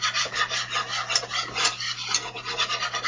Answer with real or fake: real